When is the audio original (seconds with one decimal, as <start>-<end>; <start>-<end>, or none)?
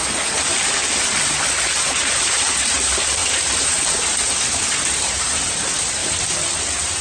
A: 0.0-1.9; 6.0-6.6